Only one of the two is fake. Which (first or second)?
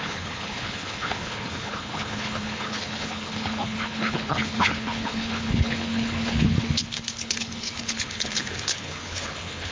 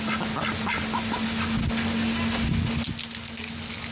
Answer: first